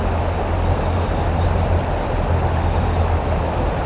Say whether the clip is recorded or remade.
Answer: recorded